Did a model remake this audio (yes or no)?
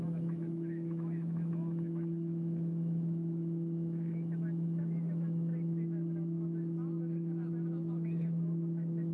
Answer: yes